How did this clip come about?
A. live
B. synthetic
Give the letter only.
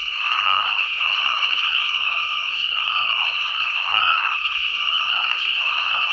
B